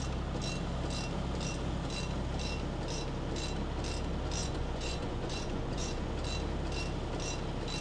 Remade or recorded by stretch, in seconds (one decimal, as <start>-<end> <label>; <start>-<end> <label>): 0.0-4.4 recorded; 4.4-6.1 remade; 6.1-7.8 recorded